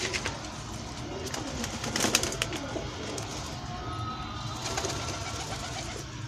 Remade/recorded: recorded